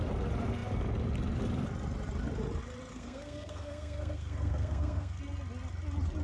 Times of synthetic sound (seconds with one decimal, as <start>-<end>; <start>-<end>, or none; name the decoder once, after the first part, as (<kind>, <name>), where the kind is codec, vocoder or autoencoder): 2.9-5.2 (codec, SNAC)